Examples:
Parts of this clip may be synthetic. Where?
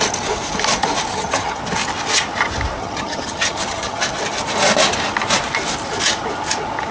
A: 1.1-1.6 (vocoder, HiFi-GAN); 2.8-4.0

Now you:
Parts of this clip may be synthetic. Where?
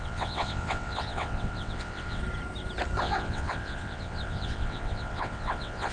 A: 0.0-2.2 (vocoder, WaveNeXt); 3.0-5.9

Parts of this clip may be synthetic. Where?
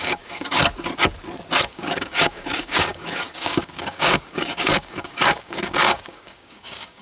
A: 0.0-0.6 (codec, DAC); 1.6-7.0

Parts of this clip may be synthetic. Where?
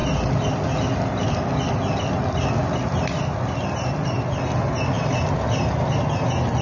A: none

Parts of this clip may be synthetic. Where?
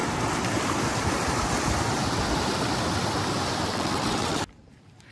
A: 3.7-4.4 (vocoder, WaveNeXt)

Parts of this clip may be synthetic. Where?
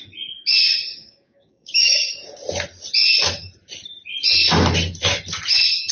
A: 0.9-2.1 (codec, DAC)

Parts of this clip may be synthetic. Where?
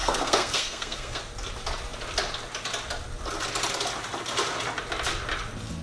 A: 0.0-1.2 (codec, SNAC)